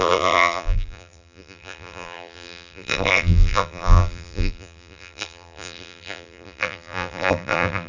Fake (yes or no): yes